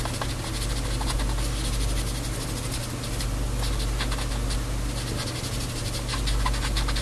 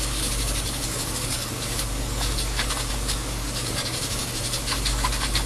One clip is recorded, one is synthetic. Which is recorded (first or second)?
first